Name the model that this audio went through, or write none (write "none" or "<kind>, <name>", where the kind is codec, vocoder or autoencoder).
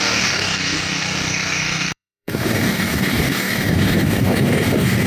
codec, DAC